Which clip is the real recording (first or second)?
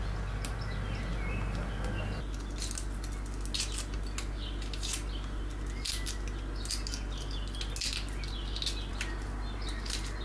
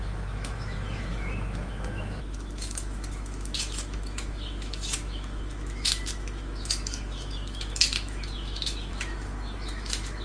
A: first